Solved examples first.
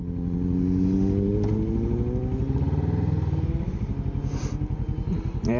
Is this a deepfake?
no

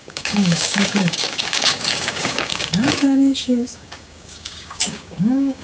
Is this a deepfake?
yes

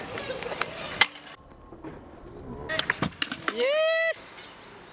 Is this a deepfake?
no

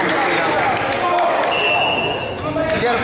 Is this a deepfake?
no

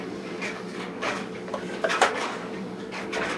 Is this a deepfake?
yes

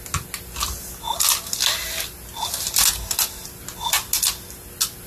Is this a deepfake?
no